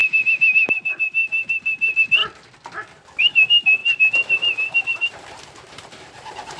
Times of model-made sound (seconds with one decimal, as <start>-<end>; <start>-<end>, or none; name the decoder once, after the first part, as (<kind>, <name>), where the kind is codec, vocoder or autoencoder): 0.0-2.2 (vocoder, BigVGAN v2); 3.2-6.6